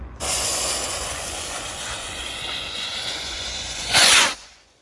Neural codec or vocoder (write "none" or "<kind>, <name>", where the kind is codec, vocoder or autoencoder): vocoder, Vocos